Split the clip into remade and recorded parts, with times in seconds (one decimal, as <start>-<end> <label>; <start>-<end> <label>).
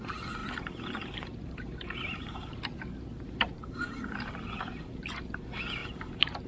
0.0-0.4 recorded; 0.4-4.3 remade; 4.3-5.8 recorded; 5.8-6.5 remade